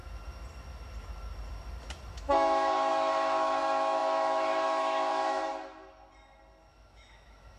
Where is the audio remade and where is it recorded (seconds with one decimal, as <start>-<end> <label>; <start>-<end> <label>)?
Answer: 0.0-2.1 recorded; 2.1-5.5 remade; 5.5-6.7 recorded; 6.7-7.6 remade